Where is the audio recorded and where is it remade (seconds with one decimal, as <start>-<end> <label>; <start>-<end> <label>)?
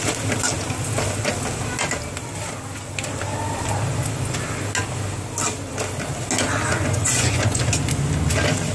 0.0-6.7 recorded; 6.7-7.6 remade; 7.6-8.7 recorded